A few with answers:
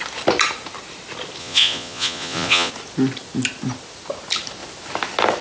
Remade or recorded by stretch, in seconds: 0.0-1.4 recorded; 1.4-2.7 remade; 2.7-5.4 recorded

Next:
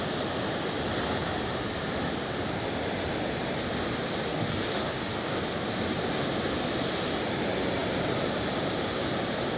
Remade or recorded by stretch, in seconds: 0.0-4.3 recorded; 4.3-5.4 remade; 5.4-9.6 recorded

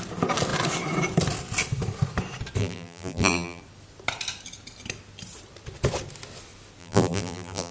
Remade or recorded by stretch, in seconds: 0.0-2.6 recorded; 2.6-3.6 remade; 3.6-6.8 recorded; 6.8-7.7 remade

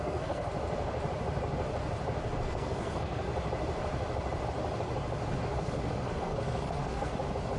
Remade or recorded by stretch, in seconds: 0.0-0.5 remade; 0.5-2.4 recorded; 2.4-3.3 remade; 3.3-5.5 recorded; 5.5-7.1 remade; 7.1-7.6 recorded

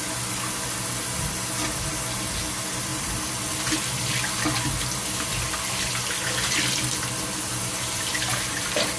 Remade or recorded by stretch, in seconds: 0.0-2.9 recorded; 2.9-4.1 remade; 4.1-9.0 recorded